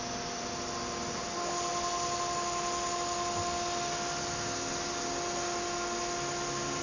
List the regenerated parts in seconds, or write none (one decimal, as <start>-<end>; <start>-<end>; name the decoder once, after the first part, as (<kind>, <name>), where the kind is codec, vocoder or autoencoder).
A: none

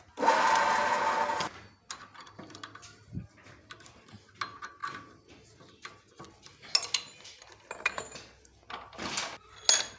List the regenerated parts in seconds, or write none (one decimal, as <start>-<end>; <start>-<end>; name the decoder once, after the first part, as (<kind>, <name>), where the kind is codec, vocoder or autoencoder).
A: none

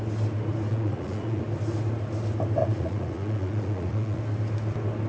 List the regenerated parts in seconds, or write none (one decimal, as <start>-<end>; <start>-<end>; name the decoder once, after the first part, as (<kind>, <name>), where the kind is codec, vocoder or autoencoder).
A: 0.7-1.4 (vocoder, Vocos); 2.6-4.2

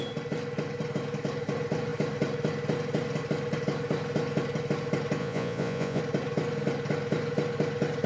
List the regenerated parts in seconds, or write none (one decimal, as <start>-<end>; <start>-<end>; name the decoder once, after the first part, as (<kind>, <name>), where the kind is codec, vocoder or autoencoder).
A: 5.2-6.0 (vocoder, Vocos)

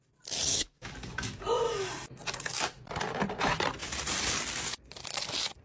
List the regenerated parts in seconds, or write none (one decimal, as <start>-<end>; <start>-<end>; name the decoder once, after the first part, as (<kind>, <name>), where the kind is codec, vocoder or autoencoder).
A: 0.5-1.4 (codec, DAC)

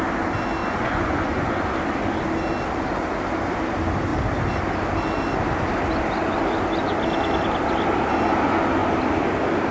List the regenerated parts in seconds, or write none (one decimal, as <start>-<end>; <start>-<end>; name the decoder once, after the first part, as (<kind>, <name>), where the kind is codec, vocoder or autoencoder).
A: 0.6-1.6 (vocoder, Vocos)